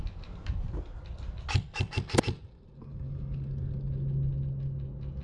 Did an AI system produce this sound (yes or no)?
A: no